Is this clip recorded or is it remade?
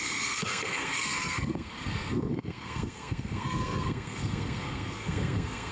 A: remade